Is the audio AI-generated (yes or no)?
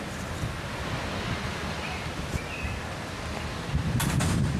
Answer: no